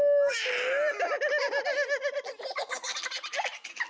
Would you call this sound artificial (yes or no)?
no